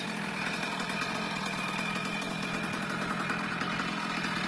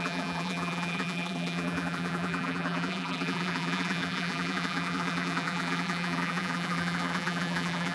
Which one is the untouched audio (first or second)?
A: first